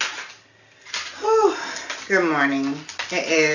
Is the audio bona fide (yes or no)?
yes